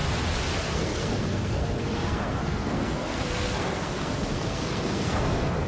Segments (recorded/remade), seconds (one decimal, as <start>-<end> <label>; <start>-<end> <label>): 0.0-0.6 recorded; 0.6-5.7 remade